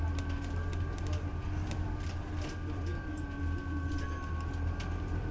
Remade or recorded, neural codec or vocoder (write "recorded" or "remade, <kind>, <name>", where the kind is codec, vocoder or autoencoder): recorded